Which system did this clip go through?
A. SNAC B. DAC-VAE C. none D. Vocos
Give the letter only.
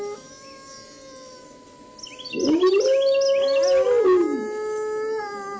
C